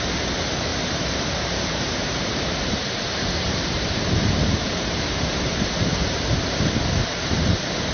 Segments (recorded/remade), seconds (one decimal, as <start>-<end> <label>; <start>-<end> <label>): 0.0-0.7 recorded; 0.7-5.4 remade; 5.4-7.9 recorded